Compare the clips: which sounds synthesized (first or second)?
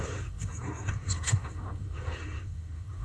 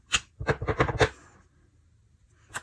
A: first